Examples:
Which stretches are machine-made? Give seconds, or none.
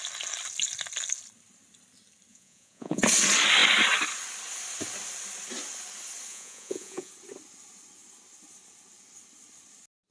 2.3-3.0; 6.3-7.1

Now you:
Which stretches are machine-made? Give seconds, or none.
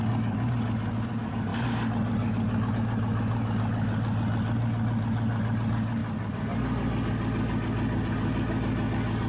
none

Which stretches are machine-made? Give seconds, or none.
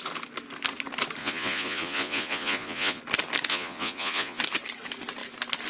1.2-3.0; 3.5-4.4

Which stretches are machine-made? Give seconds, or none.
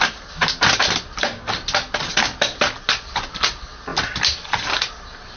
none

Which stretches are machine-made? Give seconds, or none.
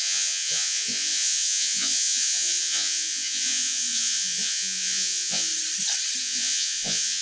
0.0-5.5; 6.2-7.2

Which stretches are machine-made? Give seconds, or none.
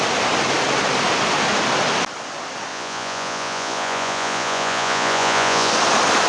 2.7-5.7